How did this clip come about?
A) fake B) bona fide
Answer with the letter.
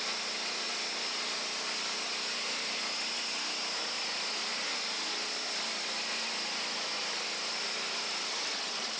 B